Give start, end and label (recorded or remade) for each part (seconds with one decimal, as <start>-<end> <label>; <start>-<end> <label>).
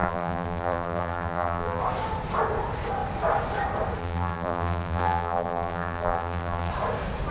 0.0-1.8 remade; 1.8-4.0 recorded; 4.0-6.7 remade; 6.7-7.3 recorded